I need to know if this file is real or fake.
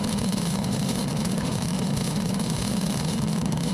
fake